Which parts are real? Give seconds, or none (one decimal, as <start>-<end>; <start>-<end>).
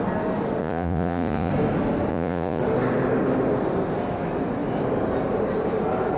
0.0-0.6; 1.5-2.1; 2.6-6.2